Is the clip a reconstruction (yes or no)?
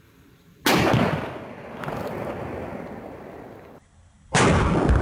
no